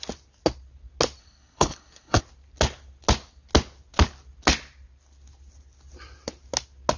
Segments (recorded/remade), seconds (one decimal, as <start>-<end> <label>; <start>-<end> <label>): 0.0-1.2 recorded; 1.2-2.2 remade; 2.2-7.0 recorded